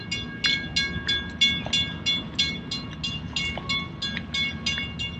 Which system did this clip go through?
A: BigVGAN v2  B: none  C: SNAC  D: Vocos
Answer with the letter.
B